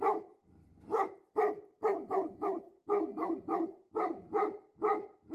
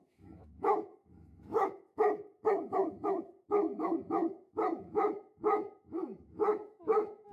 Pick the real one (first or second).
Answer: first